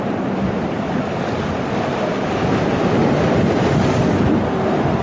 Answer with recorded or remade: recorded